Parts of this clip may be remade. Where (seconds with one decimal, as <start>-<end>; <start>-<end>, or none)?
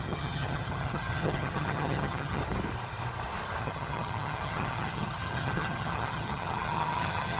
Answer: 0.0-2.4; 3.6-7.4